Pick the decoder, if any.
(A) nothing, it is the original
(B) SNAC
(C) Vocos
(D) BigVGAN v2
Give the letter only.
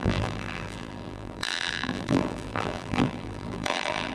D